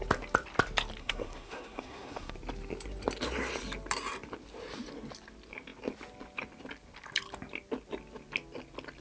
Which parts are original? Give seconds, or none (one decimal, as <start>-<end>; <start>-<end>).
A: 0.0-1.0; 2.3-9.0